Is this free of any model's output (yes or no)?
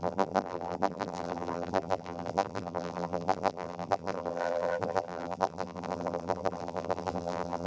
no